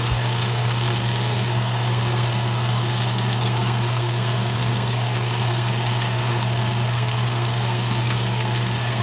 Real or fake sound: fake